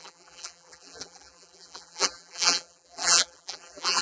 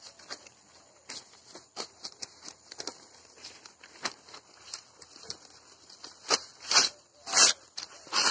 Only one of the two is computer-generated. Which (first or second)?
first